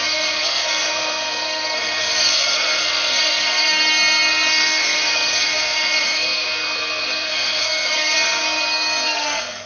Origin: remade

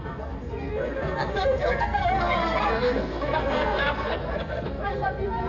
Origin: remade